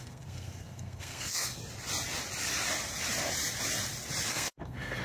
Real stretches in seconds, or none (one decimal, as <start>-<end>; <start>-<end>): 1.6-4.3